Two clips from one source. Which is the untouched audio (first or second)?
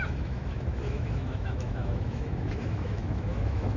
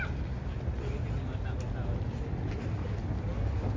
second